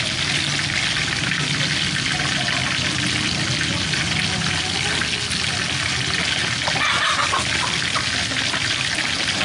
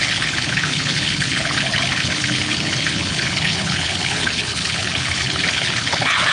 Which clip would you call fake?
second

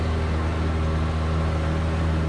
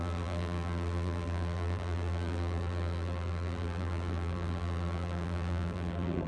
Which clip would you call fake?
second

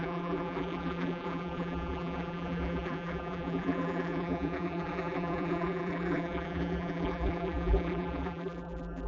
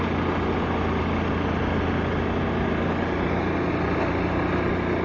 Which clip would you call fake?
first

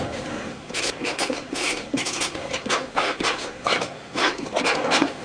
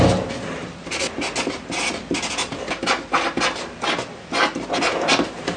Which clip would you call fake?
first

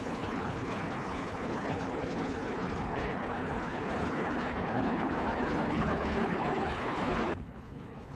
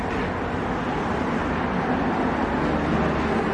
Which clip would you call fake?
first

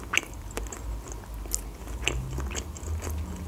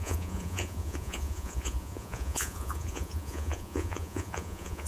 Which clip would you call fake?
second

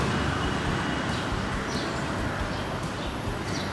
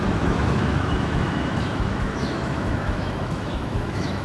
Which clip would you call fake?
second